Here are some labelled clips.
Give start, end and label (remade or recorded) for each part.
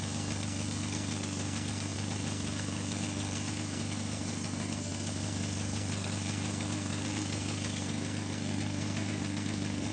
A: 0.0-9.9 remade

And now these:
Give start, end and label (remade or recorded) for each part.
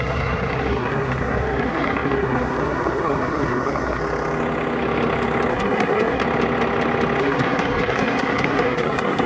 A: 0.0-4.0 remade; 4.0-5.5 recorded; 5.5-6.2 remade; 6.2-7.2 recorded; 7.2-9.3 remade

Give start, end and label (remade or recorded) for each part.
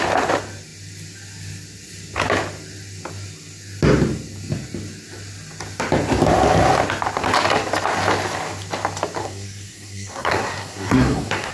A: 0.0-9.2 recorded; 9.2-11.5 remade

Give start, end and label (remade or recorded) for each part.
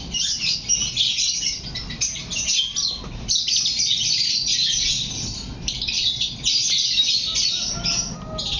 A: 0.0-8.6 recorded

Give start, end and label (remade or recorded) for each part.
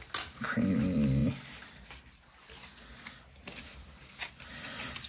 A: 0.0-5.1 recorded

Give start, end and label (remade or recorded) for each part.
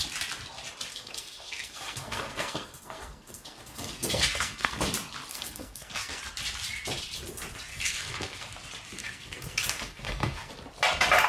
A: 0.0-0.9 recorded; 0.9-4.8 remade; 4.8-5.3 recorded; 5.3-6.2 remade; 6.2-7.7 recorded; 7.7-8.5 remade; 8.5-9.0 recorded; 9.0-10.5 remade; 10.5-11.3 recorded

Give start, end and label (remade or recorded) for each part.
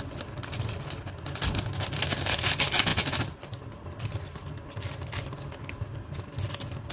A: 0.0-6.9 recorded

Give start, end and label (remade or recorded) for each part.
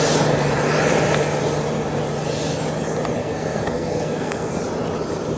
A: 0.0-3.2 recorded; 3.2-4.6 remade; 4.6-5.4 recorded